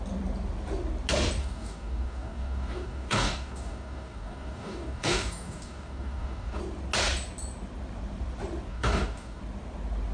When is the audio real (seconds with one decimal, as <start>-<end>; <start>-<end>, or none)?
0.0-1.4; 6.6-8.7; 9.4-10.1